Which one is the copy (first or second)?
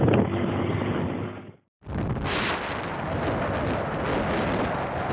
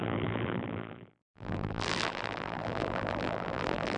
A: second